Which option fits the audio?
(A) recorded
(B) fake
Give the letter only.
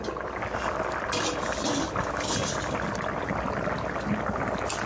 A